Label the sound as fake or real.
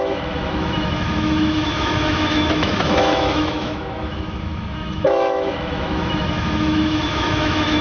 fake